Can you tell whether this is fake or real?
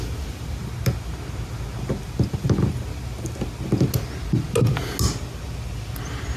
real